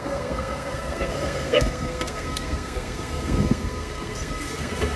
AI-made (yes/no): yes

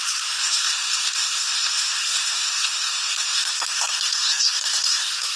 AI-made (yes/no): yes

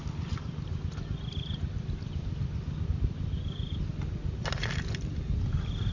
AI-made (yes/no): no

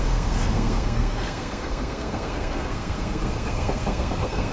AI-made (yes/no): yes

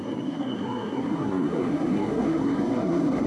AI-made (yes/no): yes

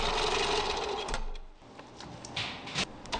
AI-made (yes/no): no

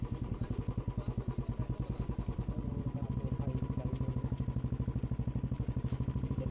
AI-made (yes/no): no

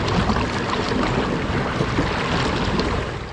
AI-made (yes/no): no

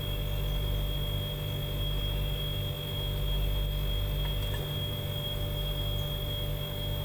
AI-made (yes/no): no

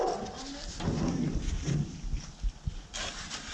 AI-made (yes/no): no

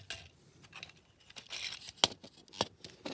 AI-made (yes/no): no